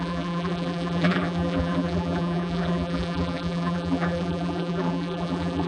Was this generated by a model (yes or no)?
yes